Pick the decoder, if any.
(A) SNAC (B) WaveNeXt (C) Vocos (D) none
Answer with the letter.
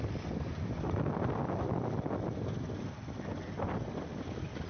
D